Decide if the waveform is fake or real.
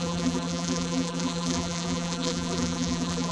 fake